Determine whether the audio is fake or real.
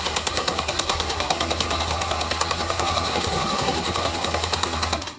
fake